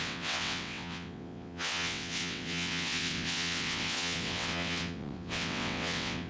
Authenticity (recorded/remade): remade